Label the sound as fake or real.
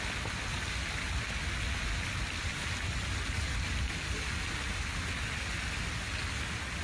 real